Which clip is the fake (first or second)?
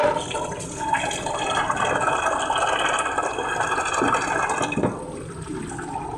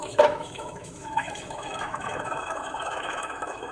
second